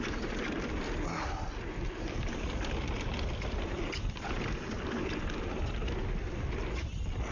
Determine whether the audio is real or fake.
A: real